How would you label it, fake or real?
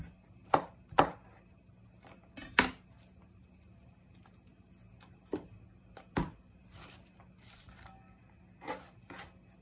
real